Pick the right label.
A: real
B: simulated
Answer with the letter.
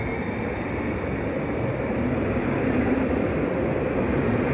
A